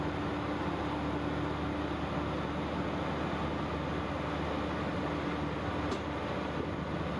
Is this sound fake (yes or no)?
no